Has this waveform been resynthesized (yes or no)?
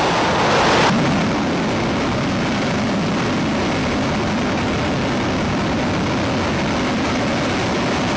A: no